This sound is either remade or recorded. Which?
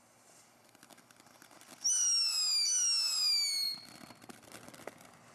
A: recorded